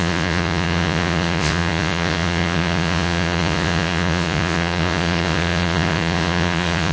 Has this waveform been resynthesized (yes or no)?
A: yes